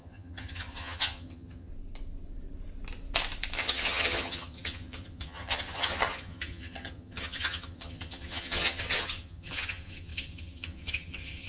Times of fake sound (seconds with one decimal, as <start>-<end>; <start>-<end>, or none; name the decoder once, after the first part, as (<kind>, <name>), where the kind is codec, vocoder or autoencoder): 0.0-1.7 (vocoder, HiFi-GAN); 3.6-11.5